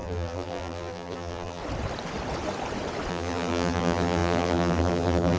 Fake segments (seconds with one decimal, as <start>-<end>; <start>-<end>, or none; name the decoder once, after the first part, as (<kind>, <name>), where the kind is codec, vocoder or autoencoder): 0.0-1.6 (vocoder, BigVGAN v2); 3.1-5.4